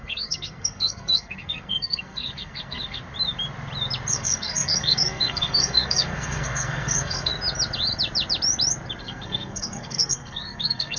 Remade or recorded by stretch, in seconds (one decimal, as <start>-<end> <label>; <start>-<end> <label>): 0.0-3.0 remade; 3.0-4.1 recorded; 4.1-7.3 remade; 7.3-9.0 recorded; 9.0-11.0 remade